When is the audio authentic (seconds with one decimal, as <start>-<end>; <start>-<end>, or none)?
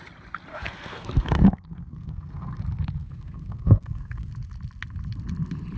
0.0-0.5; 2.6-3.0; 4.3-5.8